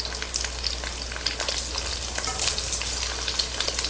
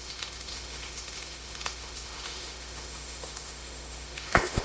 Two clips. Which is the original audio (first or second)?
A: first